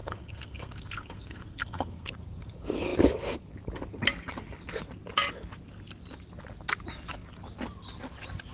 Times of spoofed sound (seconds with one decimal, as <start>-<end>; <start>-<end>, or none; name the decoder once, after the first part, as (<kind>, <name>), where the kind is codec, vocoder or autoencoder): 0.0-2.1 (codec, SNAC)